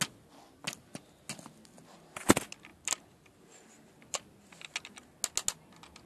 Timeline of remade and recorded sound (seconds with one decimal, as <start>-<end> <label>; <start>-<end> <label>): 0.0-6.1 recorded